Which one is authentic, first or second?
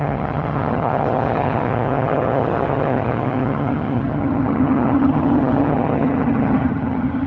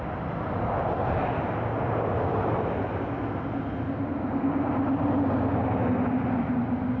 second